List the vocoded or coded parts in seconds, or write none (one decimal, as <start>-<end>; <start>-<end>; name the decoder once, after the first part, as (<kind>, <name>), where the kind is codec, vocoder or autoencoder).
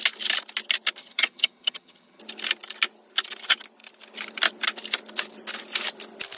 1.0-2.2 (vocoder, HiFi-GAN)